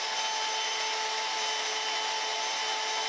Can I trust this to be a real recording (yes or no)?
yes